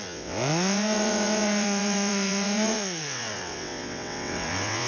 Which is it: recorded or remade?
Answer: remade